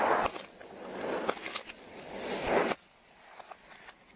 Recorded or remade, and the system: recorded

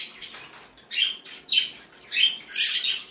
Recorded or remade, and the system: recorded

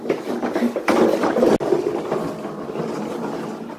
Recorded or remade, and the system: recorded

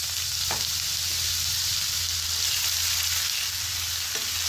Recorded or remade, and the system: recorded